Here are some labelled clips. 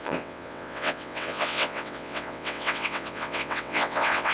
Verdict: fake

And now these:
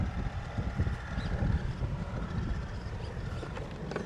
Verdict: real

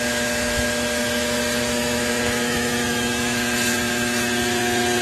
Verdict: fake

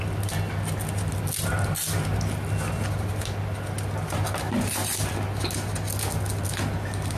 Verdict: real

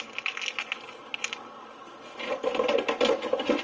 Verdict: real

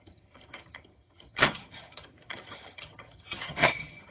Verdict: fake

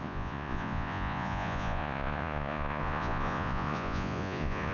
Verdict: fake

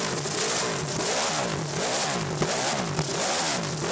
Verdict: real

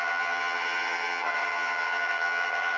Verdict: fake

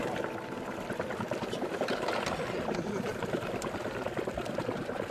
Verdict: real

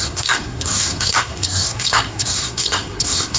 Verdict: fake